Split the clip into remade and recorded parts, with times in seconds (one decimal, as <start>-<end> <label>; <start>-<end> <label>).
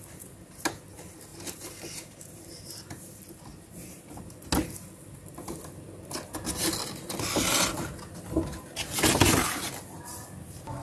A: 0.0-1.3 recorded; 1.3-3.0 remade; 3.0-3.5 recorded; 3.5-4.0 remade; 4.0-10.8 recorded